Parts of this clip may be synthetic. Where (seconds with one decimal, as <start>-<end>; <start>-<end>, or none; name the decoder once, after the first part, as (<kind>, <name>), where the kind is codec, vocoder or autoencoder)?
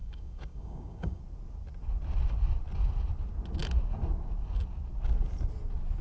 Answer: 0.0-1.2 (codec, DAC)